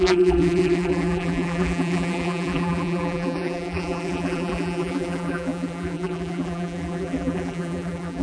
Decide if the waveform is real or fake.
fake